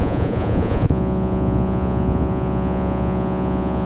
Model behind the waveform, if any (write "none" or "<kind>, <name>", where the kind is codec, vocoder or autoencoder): vocoder, Vocos